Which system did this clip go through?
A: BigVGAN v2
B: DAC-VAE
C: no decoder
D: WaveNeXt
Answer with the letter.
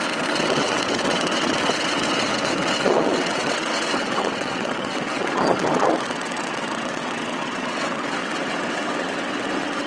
D